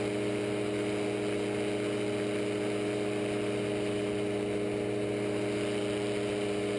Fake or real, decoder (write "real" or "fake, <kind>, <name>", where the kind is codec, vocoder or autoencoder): real